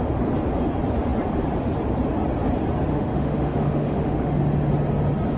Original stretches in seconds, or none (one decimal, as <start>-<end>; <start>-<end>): 0.0-2.9; 4.4-5.4